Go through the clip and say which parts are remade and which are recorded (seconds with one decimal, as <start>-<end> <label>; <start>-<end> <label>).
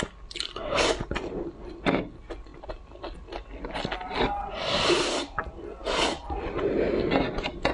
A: 0.0-7.7 recorded